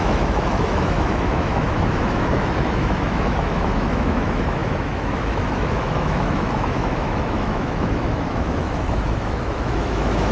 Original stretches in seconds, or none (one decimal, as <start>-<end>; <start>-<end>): none